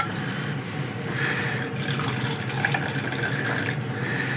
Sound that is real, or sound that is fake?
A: real